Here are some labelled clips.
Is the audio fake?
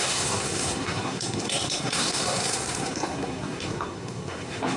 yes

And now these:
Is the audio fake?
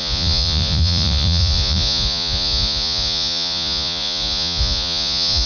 yes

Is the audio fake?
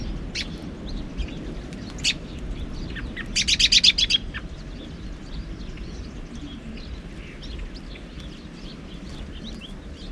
no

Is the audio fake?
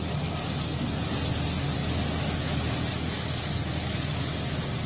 no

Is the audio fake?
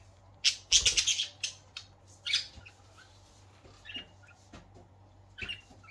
no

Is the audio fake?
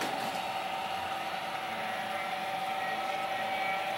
no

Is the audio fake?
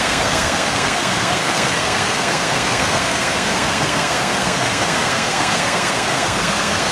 yes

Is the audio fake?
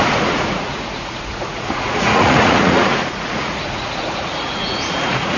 yes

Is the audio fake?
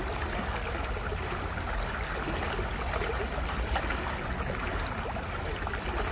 no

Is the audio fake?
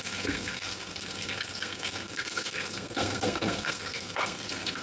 yes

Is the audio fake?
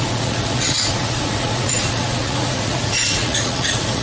yes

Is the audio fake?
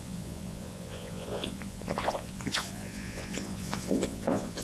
yes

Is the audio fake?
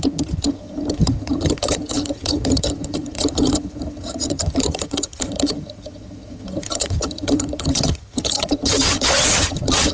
yes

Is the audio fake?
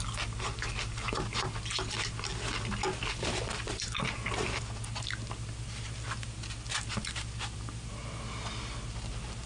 no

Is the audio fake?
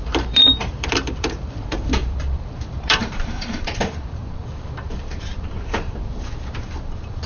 yes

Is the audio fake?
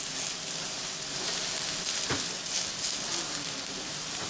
no